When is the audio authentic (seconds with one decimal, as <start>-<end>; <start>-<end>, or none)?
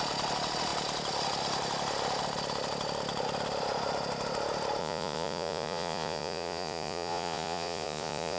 0.0-4.8